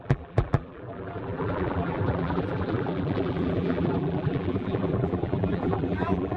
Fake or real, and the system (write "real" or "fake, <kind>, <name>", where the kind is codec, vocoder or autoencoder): fake, vocoder, BigVGAN v2